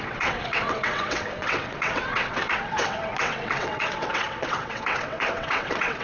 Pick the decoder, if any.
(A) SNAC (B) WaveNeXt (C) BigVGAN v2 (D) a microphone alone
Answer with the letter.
B